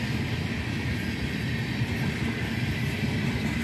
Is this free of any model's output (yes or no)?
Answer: yes